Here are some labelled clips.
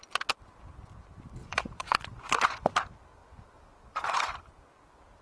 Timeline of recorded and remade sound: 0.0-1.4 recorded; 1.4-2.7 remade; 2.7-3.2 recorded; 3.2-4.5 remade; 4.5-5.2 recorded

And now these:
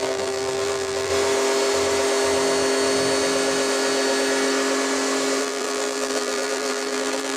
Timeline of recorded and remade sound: 0.0-1.1 remade; 1.1-5.4 recorded; 5.4-7.4 remade